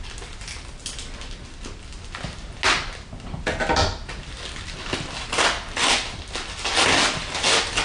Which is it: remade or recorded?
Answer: recorded